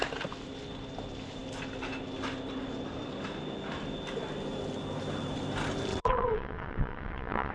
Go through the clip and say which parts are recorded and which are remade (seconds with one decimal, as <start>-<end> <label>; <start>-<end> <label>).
0.0-5.9 recorded; 5.9-7.5 remade